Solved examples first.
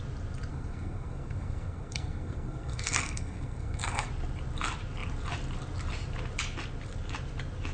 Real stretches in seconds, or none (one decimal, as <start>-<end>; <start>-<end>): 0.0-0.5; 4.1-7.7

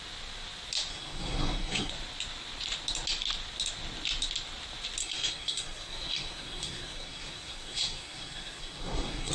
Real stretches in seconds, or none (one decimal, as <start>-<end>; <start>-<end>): 0.0-0.9; 1.9-5.0

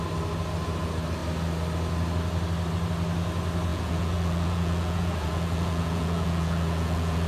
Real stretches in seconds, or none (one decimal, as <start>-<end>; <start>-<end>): 0.0-3.7